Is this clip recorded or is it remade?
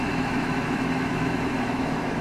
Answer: remade